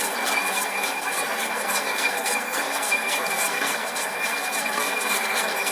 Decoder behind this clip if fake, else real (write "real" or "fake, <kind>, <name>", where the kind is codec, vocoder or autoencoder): fake, codec, SNAC